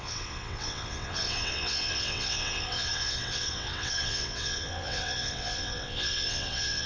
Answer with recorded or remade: remade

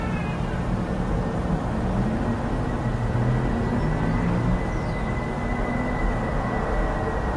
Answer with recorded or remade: recorded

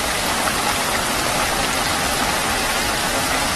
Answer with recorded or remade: recorded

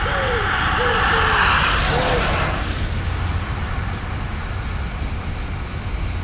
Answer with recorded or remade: recorded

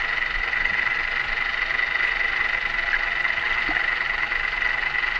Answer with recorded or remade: recorded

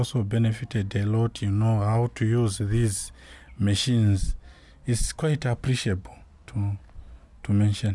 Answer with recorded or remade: recorded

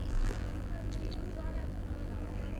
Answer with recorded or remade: remade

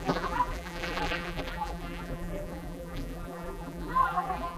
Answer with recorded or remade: remade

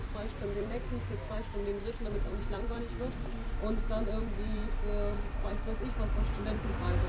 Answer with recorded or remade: remade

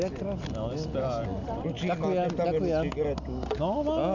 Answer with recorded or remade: recorded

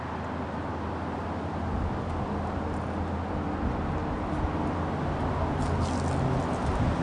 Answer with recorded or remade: recorded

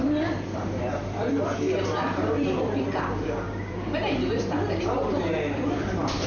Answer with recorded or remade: remade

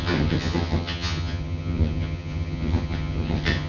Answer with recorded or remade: remade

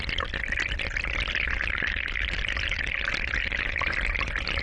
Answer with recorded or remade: recorded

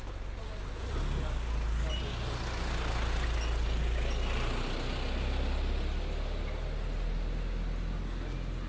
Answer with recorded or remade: recorded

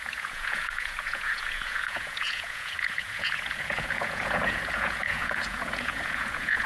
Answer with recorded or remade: remade